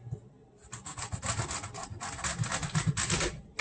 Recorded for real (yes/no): yes